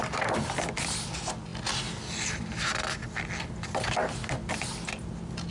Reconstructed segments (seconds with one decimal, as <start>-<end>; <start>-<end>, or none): none